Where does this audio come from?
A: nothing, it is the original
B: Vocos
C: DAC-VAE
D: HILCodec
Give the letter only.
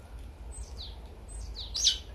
A